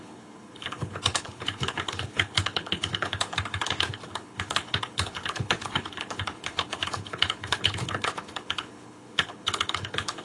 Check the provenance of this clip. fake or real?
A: fake